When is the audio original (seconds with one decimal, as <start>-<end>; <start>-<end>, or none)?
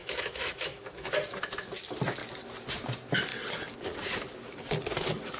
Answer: 1.1-5.4